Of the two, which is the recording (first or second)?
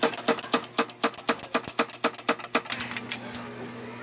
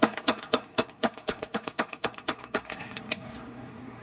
first